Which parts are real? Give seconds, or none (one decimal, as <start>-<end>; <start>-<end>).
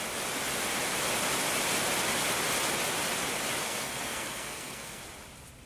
0.0-3.6; 5.0-5.7